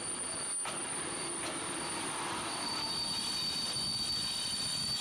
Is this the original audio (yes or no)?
yes